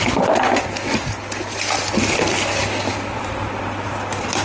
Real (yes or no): yes